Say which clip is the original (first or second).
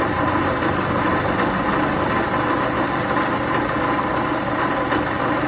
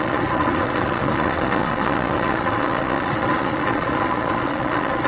first